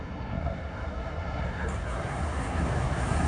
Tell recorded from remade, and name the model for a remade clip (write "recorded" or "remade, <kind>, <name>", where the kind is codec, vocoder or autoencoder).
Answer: remade, codec, SNAC